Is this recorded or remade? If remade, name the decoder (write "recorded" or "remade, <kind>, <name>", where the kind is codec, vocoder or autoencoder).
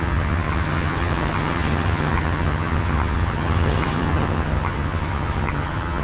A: remade, vocoder, HiFi-GAN